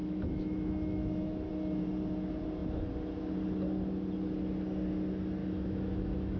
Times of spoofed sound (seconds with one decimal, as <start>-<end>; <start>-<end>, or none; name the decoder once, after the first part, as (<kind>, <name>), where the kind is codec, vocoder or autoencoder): 0.0-1.5 (autoencoder, DAC-VAE); 5.4-6.4